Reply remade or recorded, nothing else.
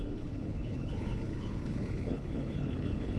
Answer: remade